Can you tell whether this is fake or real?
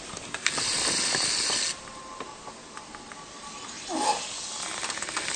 real